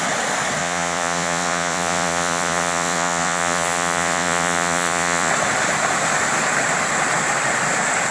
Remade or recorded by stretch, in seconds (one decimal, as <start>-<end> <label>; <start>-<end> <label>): 0.0-0.6 recorded; 0.6-5.3 remade; 5.3-8.1 recorded